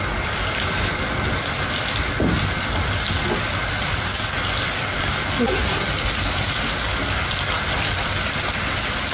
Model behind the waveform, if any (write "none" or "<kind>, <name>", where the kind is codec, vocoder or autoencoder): none